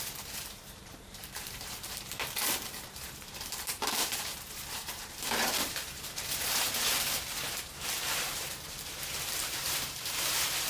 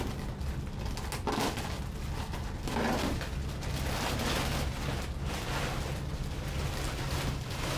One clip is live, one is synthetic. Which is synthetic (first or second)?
first